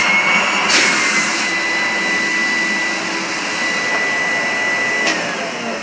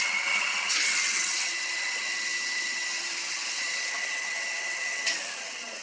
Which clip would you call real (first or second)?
first